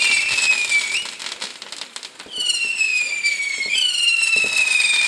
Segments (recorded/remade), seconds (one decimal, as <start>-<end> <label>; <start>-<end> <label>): 0.0-1.5 recorded; 1.5-2.0 remade; 2.0-2.9 recorded; 2.9-3.9 remade; 3.9-5.1 recorded